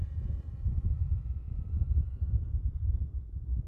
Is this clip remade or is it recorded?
remade